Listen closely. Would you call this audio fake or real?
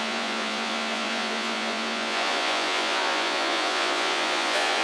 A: fake